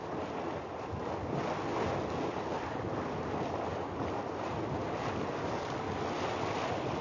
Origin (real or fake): real